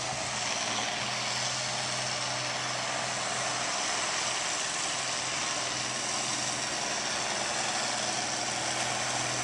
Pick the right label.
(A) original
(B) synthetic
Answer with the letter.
A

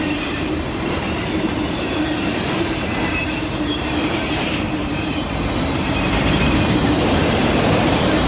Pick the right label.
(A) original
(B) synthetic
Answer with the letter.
B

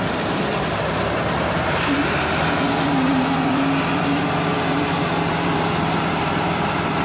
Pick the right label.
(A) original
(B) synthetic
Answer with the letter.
B